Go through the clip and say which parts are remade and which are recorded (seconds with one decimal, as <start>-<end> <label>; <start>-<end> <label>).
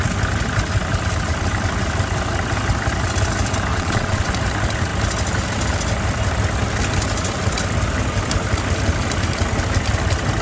0.0-3.7 recorded; 3.7-4.3 remade; 4.3-10.4 recorded